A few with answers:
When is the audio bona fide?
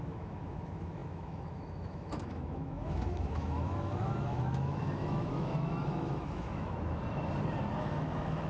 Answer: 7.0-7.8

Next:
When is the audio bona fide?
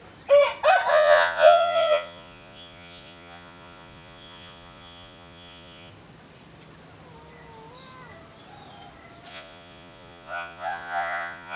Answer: 0.0-0.9; 5.9-9.3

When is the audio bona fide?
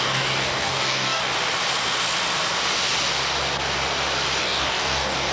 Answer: 1.2-4.4